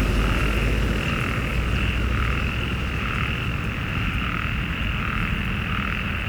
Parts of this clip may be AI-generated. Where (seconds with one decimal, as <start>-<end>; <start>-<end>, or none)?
none